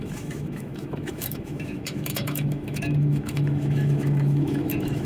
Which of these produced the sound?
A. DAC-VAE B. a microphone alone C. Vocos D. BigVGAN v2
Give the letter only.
A